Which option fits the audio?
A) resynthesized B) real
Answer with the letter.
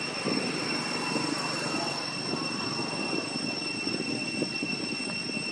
B